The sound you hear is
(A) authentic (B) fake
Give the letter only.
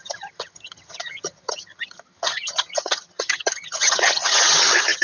B